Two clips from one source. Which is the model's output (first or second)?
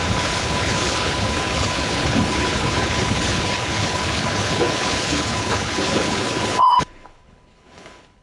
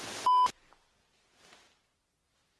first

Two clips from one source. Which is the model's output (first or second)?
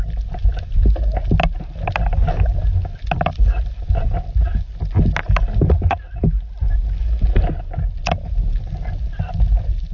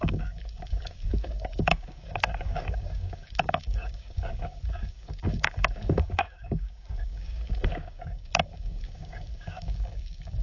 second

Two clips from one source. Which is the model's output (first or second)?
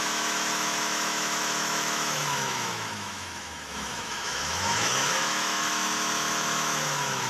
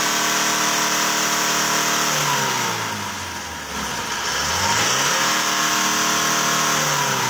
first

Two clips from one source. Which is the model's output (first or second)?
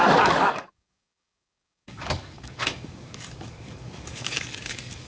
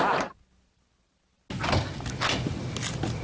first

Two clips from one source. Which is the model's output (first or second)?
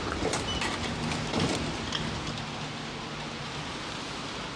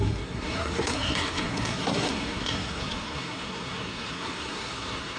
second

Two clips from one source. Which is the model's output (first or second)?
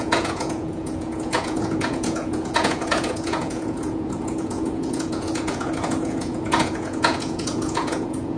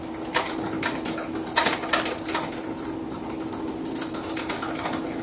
first